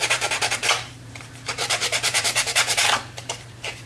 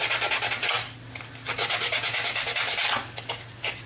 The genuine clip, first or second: second